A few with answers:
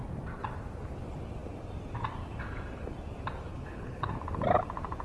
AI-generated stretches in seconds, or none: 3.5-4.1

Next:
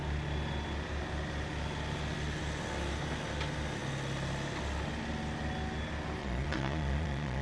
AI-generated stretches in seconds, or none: 6.2-7.4